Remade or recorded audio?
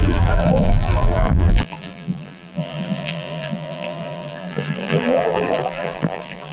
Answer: remade